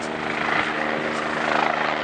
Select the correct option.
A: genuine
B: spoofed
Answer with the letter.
A